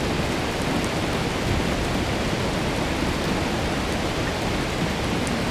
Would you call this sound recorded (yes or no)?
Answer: yes